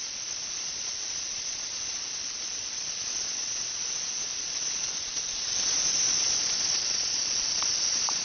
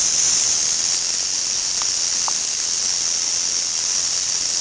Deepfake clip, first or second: first